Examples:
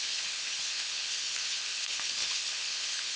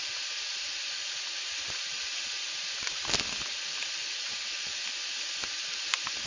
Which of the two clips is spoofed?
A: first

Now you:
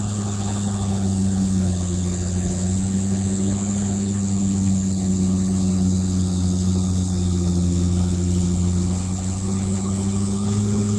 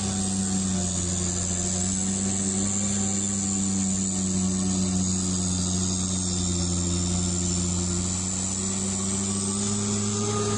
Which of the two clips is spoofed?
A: first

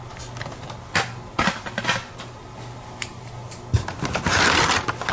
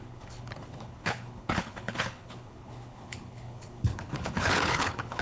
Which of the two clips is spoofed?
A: second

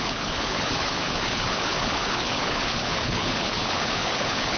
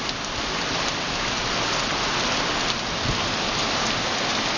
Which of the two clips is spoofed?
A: first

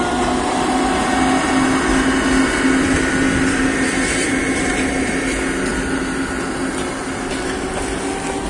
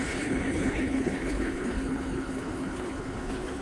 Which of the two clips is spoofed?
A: second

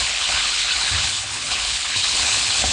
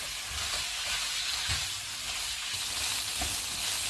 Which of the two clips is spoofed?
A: first